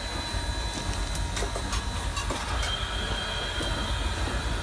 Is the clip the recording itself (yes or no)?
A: yes